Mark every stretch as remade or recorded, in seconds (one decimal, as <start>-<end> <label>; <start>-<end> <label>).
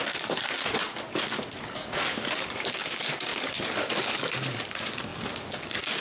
0.0-6.0 remade